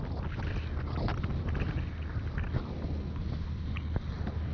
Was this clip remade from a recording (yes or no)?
no